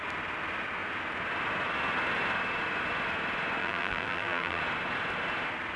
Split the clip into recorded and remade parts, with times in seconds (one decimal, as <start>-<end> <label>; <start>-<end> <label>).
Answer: 0.0-3.6 recorded; 3.6-4.6 remade; 4.6-5.8 recorded